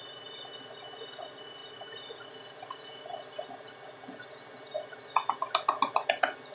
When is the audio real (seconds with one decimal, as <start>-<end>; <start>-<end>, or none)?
0.0-6.5